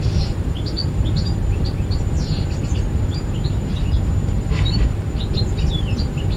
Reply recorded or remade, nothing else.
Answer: recorded